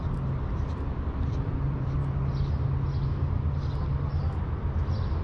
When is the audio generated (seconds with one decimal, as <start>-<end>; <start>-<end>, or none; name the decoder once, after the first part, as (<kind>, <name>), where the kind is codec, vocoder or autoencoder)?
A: 0.5-2.0 (vocoder, BigVGAN v2)